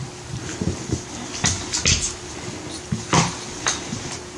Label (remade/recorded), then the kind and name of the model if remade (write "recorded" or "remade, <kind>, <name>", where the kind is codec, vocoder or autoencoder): recorded